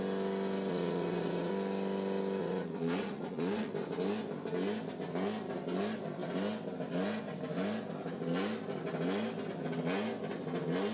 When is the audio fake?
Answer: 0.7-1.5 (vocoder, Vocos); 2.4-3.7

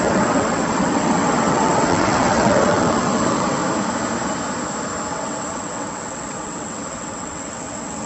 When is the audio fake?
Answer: 0.0-3.6 (vocoder, WaveNeXt); 5.1-8.1

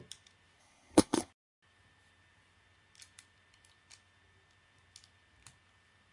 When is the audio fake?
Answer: 0.6-1.3 (codec, SNAC)

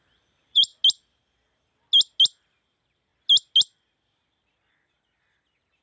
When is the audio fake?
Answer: 0.0-0.7 (vocoder, BigVGAN v2); 2.5-3.1; 4.7-5.8

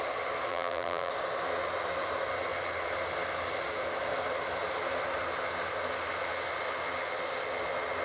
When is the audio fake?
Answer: 0.5-1.1 (vocoder, BigVGAN v2)

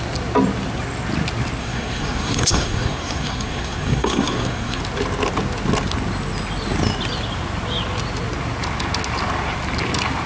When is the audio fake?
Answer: 1.6-4.8 (codec, SNAC)

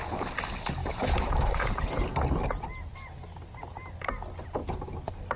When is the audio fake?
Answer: 0.8-1.7 (autoencoder, DAC-VAE)